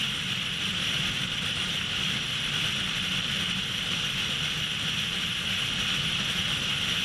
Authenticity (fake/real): real